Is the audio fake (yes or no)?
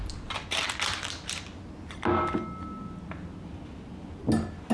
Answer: no